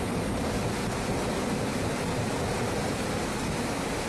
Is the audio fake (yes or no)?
no